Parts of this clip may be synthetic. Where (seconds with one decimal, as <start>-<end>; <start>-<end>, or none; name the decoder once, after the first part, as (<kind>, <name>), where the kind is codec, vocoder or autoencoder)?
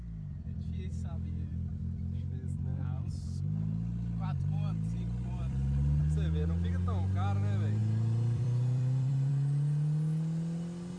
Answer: 2.7-6.0 (vocoder, BigVGAN v2); 7.8-9.3